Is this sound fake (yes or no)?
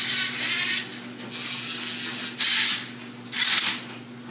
no